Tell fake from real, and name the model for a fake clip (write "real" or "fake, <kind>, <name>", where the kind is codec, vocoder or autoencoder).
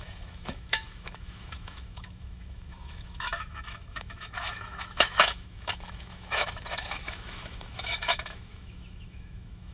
fake, autoencoder, DAC-VAE